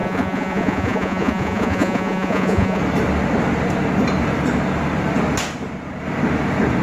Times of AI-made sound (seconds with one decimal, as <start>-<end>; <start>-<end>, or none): 0.0-2.8